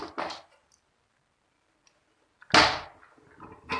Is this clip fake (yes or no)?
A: no